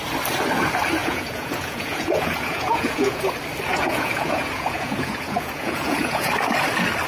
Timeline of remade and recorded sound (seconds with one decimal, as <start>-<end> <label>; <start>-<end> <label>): 0.0-1.0 recorded; 1.0-3.2 remade; 3.2-3.7 recorded; 3.7-6.3 remade; 6.3-7.1 recorded